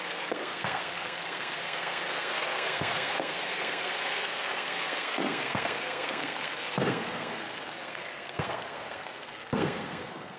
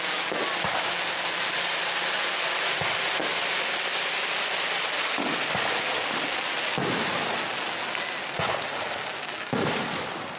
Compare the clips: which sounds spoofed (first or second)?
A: first